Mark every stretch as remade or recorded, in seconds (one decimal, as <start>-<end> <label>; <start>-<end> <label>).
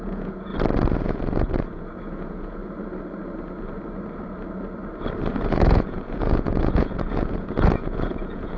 0.0-0.5 remade; 0.5-1.0 recorded; 1.0-2.6 remade; 2.6-5.3 recorded; 5.3-8.6 remade